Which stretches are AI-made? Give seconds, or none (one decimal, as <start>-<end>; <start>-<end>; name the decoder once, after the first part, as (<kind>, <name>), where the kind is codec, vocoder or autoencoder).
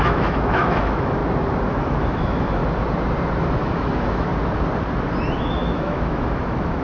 0.0-1.2 (autoencoder, DAC-VAE); 1.7-2.6; 3.6-4.3; 5.2-6.8